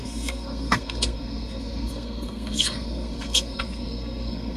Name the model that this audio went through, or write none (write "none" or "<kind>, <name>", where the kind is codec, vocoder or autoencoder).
codec, SNAC